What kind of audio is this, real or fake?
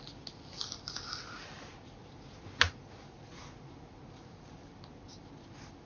real